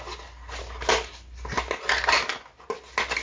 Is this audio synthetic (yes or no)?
no